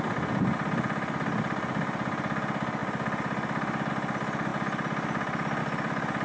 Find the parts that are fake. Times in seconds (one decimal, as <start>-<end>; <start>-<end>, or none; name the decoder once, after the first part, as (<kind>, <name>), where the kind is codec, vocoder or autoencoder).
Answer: none